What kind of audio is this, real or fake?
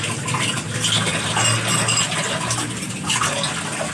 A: real